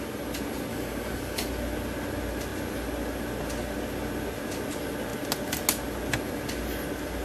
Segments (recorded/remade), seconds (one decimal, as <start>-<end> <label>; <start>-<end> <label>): 0.0-0.7 recorded; 0.7-1.5 remade; 1.5-7.2 recorded